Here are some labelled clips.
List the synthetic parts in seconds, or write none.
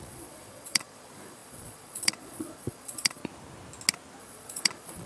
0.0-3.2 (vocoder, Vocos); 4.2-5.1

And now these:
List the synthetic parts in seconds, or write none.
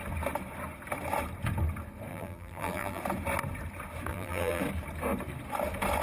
2.1-3.0 (vocoder, BigVGAN v2); 4.1-4.6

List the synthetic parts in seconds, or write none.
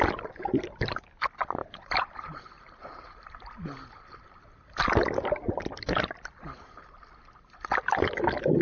1.6-3.3 (vocoder, BigVGAN v2)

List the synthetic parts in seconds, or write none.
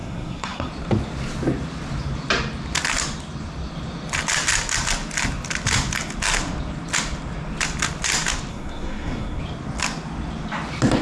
0.0-0.7 (codec, SNAC); 8.5-9.4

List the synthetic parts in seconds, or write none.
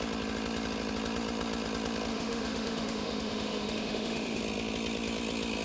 2.1-4.4 (autoencoder, DAC-VAE)